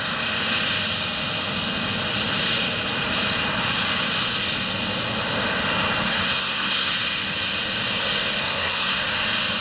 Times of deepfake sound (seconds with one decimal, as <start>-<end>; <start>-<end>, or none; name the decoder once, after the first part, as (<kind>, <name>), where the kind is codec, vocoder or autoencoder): 6.1-6.9 (codec, SNAC); 8.4-9.0